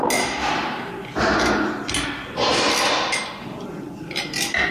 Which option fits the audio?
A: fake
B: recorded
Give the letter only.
B